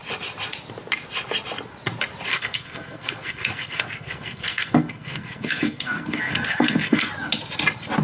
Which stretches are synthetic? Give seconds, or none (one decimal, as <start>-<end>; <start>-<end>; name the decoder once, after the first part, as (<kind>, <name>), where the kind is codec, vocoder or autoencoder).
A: 2.3-7.1 (codec, SNAC)